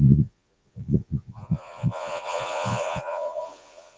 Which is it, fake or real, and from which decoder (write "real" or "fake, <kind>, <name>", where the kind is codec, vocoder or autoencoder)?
fake, vocoder, Vocos